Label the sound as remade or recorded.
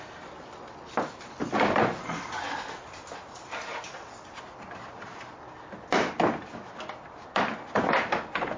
recorded